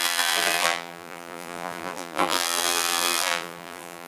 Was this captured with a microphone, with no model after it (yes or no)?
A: no